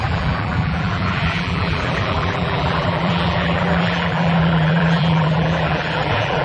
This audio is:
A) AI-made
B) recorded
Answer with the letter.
A